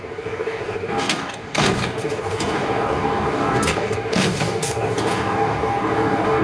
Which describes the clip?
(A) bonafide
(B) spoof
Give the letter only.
B